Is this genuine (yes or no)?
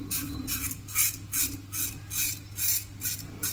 yes